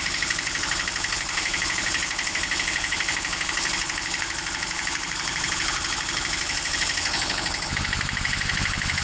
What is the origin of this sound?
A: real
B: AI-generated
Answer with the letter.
B